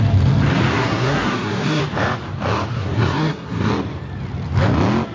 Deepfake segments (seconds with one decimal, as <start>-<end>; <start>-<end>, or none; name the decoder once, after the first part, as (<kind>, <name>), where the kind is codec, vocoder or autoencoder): 0.7-1.8 (codec, SNAC); 2.7-3.7